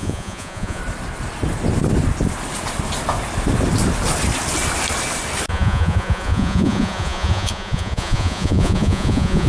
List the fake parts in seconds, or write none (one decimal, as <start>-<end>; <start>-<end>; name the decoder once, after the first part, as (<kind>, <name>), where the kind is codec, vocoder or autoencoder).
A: 0.0-0.8 (vocoder, Vocos); 5.5-9.5